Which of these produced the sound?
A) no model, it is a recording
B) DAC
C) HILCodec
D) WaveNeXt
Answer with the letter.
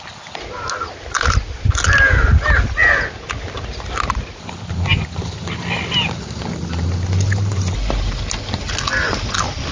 A